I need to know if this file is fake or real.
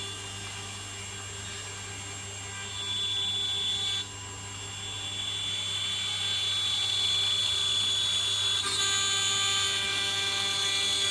real